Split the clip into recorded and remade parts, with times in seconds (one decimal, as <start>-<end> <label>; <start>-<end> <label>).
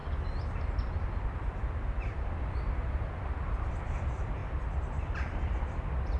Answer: 0.0-4.4 remade; 4.4-4.9 recorded; 4.9-6.2 remade